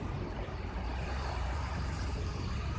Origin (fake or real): fake